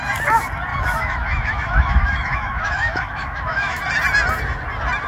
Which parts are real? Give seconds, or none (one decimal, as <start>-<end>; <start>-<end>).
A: 0.0-0.7; 3.8-5.1